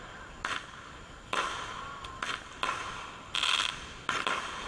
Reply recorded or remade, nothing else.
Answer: recorded